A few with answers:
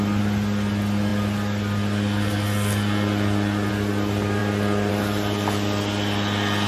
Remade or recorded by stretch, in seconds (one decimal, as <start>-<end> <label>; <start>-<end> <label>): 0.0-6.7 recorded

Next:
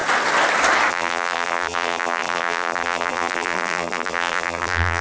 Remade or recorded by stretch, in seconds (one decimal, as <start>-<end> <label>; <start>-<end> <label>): 0.0-0.9 recorded; 0.9-5.0 remade

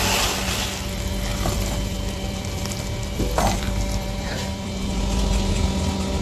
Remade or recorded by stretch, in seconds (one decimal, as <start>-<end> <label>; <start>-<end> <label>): 0.0-1.3 recorded; 1.3-5.0 remade; 5.0-6.2 recorded